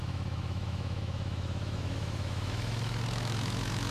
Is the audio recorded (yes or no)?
no